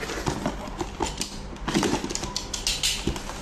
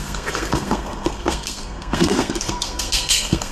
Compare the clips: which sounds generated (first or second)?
second